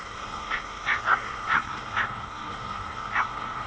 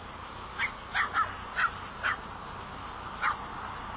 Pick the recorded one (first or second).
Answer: second